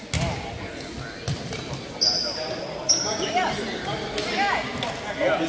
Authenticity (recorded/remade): recorded